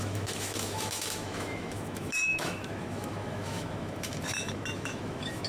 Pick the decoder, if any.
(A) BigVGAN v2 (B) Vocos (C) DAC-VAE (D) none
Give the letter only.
C